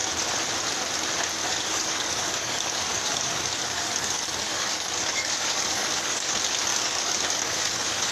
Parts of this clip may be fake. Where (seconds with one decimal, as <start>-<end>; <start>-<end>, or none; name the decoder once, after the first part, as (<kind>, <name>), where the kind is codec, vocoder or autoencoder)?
1.4-6.3 (codec, DAC); 6.7-8.1